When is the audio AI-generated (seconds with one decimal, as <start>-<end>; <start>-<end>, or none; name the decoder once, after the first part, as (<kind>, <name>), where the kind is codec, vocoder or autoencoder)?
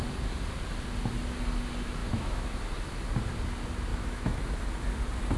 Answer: 2.0-2.6 (autoencoder, DAC-VAE); 3.9-4.4